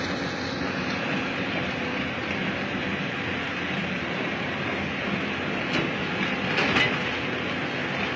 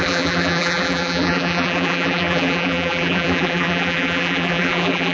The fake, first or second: second